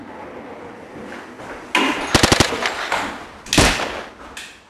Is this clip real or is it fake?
real